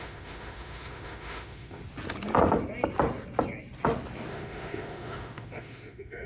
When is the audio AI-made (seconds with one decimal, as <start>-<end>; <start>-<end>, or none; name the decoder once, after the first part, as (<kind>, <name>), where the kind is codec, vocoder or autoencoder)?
0.0-1.8 (autoencoder, DAC-VAE); 4.3-6.3

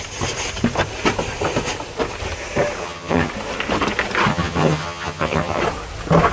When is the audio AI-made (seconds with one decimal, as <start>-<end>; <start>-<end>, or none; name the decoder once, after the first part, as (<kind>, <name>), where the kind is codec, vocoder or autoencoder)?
2.8-3.3 (vocoder, HiFi-GAN); 4.3-5.6

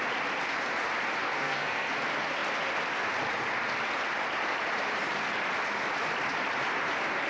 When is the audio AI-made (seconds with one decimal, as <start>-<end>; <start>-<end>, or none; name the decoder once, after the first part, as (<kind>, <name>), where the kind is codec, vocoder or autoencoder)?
1.2-1.9 (codec, SNAC)